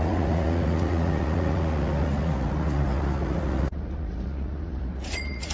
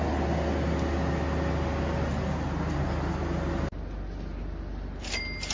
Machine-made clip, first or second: first